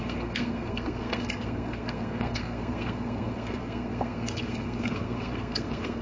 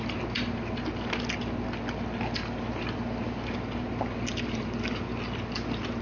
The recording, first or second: second